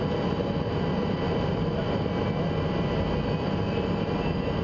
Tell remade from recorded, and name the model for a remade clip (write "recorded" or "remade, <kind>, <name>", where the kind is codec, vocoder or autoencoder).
recorded